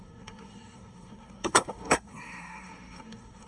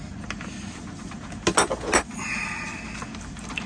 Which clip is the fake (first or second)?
first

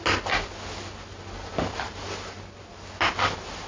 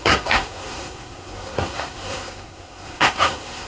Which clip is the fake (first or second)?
second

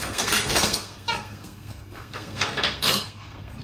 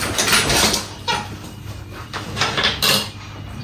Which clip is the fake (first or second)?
first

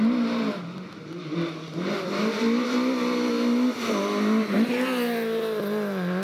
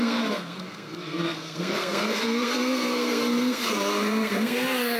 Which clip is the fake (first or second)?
second